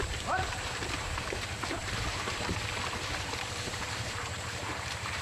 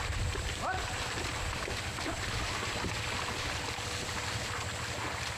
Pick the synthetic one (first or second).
first